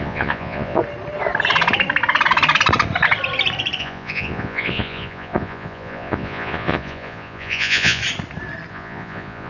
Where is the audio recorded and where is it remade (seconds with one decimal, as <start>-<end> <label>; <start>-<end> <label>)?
0.0-0.8 remade; 0.8-3.8 recorded; 3.8-8.0 remade; 8.0-8.7 recorded; 8.7-9.5 remade